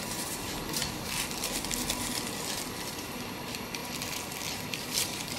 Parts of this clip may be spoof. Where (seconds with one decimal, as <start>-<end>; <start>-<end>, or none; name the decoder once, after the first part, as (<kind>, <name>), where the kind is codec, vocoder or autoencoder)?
0.0-3.8 (vocoder, BigVGAN v2); 4.7-5.4